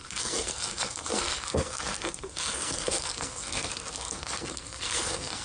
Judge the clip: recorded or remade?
remade